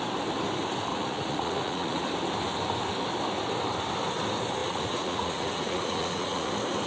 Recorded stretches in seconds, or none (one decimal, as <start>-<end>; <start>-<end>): 0.0-0.9; 2.0-4.6; 6.5-6.9